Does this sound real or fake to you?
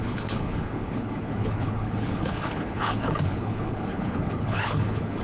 fake